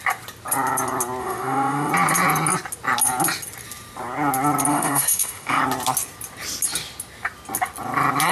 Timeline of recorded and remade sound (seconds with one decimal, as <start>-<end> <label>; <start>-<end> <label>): 0.0-1.2 recorded; 1.2-1.9 remade; 1.9-4.7 recorded; 4.7-5.6 remade; 5.6-8.3 recorded